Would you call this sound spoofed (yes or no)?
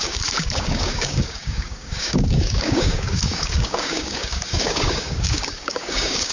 yes